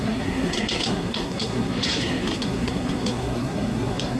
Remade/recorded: remade